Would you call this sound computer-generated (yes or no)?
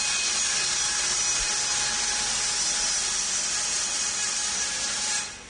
no